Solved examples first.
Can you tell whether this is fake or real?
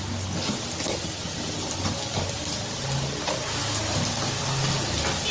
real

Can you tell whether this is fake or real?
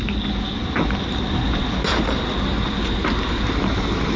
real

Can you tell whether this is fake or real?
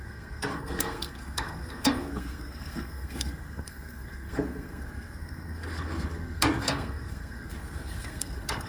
fake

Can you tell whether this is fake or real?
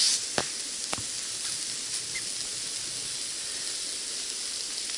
real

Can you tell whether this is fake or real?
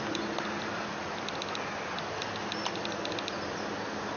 real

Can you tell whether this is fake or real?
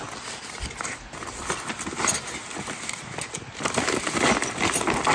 real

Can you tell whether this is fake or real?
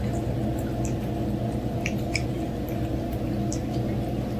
real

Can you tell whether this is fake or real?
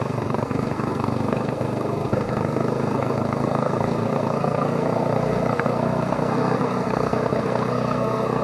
fake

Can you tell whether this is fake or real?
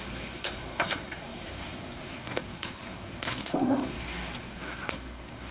fake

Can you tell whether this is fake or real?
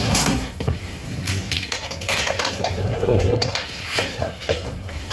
fake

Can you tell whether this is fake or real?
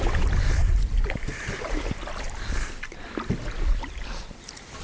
real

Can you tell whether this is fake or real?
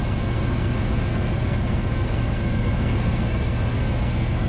fake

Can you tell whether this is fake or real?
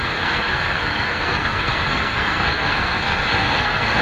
fake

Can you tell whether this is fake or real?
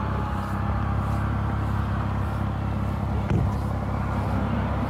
real